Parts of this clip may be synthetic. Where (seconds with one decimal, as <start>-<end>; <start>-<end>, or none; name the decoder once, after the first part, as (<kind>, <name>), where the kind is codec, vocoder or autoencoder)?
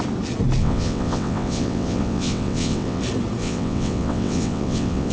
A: 0.6-3.0 (vocoder, WaveNeXt); 3.4-5.1